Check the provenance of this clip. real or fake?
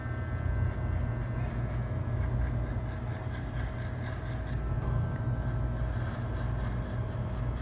real